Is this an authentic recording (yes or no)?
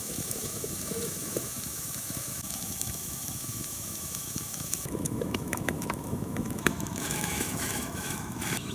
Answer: no